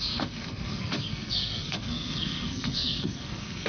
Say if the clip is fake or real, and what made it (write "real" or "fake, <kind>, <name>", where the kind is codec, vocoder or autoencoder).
fake, codec, SNAC